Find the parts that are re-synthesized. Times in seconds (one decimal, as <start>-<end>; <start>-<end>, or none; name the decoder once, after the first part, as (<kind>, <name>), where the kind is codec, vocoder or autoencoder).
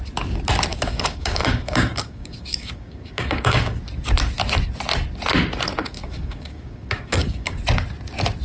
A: 0.7-3.8 (codec, DAC); 5.8-7.6